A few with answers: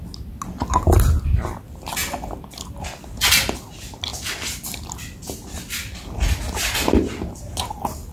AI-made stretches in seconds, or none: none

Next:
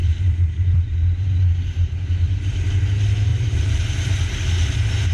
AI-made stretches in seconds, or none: 0.0-2.7 (vocoder, BigVGAN v2); 3.3-4.2